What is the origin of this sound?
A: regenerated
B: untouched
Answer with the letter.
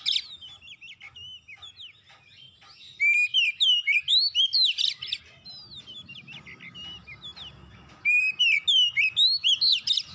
B